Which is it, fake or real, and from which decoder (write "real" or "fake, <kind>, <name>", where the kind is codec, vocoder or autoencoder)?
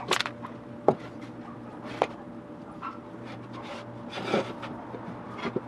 real